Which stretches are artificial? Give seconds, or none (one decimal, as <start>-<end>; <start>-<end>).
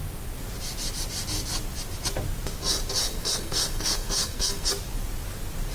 3.0-4.7